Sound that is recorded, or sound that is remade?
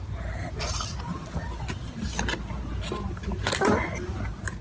recorded